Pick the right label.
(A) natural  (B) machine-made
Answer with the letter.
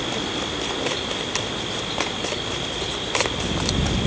A